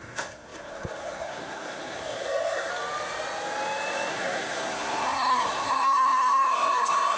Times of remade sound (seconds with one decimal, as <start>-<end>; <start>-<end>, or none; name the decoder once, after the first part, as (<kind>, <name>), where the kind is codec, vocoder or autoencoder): 0.0-2.7 (codec, SNAC); 4.1-7.2